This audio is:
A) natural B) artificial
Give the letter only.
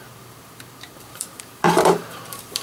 B